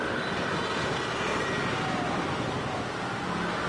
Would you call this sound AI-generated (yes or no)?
no